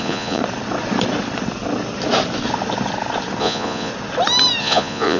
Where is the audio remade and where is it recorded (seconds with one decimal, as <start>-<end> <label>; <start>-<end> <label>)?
0.0-0.4 remade; 0.4-3.4 recorded; 3.4-3.9 remade; 3.9-4.6 recorded; 4.6-5.2 remade